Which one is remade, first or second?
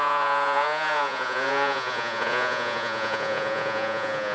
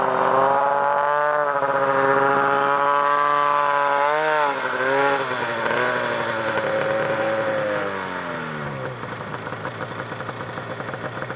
first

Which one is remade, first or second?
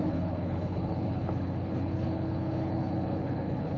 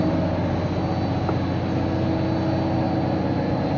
first